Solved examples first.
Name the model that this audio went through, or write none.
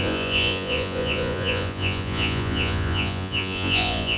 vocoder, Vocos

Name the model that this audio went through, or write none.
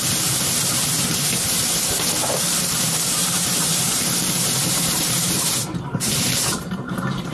vocoder, BigVGAN v2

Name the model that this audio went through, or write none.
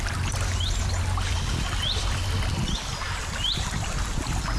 none